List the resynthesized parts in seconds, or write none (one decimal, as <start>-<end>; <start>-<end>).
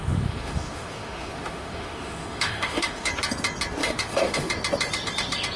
0.0-3.1; 3.8-4.5